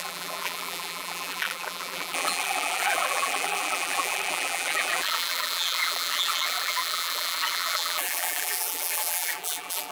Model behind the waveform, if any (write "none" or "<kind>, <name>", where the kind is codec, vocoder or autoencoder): vocoder, BigVGAN v2